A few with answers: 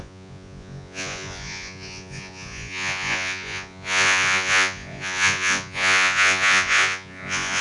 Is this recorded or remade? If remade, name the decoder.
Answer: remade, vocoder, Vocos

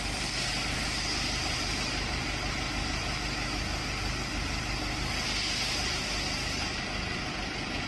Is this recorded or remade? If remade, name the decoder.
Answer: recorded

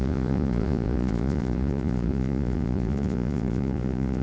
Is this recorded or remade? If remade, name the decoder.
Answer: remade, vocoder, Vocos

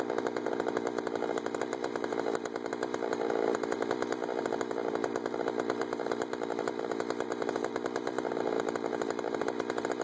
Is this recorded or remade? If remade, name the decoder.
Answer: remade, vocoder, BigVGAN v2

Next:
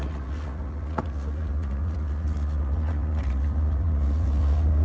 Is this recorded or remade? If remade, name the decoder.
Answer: remade, vocoder, Vocos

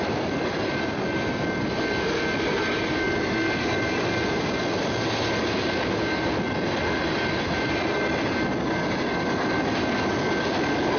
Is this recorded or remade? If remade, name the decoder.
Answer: recorded